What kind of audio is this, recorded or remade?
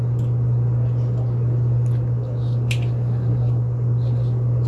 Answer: recorded